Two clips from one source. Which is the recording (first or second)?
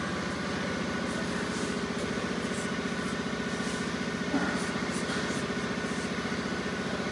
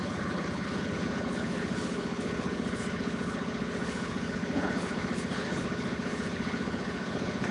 first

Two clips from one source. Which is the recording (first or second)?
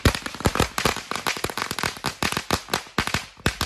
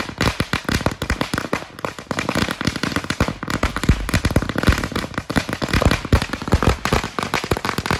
first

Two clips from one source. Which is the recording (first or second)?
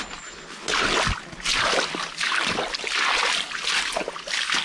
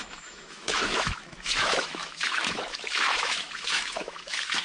first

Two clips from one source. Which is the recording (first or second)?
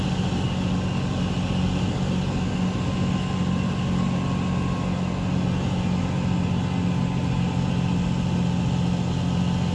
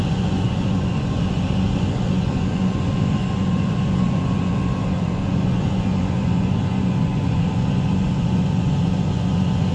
first